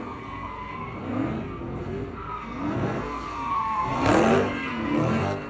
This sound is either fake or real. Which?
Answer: fake